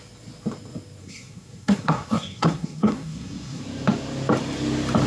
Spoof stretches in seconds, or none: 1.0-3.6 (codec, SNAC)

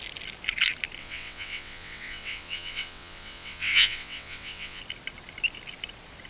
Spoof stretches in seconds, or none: 1.0-4.8 (vocoder, WaveNeXt)

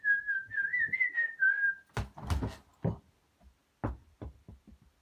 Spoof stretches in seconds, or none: none

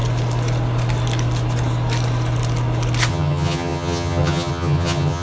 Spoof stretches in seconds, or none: 3.1-5.2 (vocoder, HiFi-GAN)

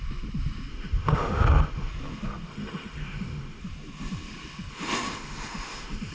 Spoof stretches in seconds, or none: 0.7-1.9 (autoencoder, DAC-VAE); 2.5-3.6; 4.7-6.1

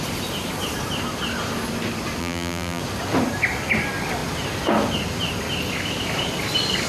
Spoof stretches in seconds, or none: 2.2-2.8 (vocoder, BigVGAN v2)